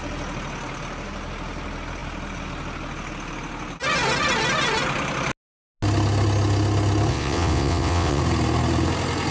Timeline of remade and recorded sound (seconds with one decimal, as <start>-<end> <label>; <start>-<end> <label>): 0.0-7.1 recorded; 7.1-8.2 remade; 8.2-9.3 recorded

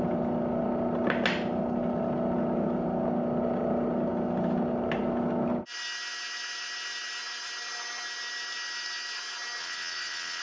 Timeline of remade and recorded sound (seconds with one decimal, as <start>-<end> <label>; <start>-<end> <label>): 0.0-9.6 recorded; 9.6-10.4 remade

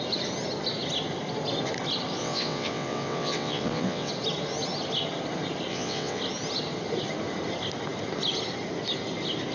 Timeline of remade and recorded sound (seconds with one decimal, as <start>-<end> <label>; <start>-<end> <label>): 0.0-2.2 recorded; 2.2-4.1 remade; 4.1-5.7 recorded; 5.7-6.2 remade; 6.2-9.5 recorded

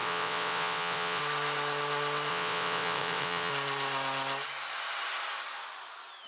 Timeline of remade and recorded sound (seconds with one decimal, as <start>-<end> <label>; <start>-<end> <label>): 0.0-1.2 remade; 1.2-2.3 recorded; 2.3-3.5 remade; 3.5-6.3 recorded

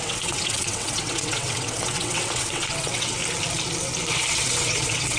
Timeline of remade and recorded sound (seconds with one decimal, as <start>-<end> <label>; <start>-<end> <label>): 0.0-3.2 remade; 3.2-4.3 recorded; 4.3-5.2 remade

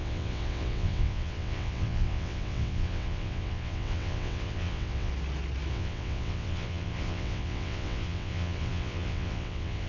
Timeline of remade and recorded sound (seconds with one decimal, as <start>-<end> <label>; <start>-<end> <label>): 0.0-5.1 remade; 5.1-5.7 recorded; 5.7-9.9 remade

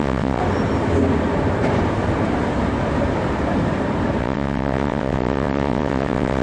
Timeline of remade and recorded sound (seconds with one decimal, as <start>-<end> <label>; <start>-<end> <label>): 0.0-0.4 remade; 0.4-4.2 recorded; 4.2-6.4 remade

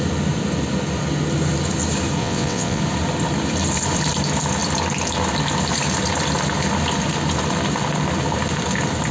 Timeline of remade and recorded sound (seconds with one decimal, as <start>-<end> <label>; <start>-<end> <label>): 0.0-2.2 recorded; 2.2-2.8 remade; 2.8-9.1 recorded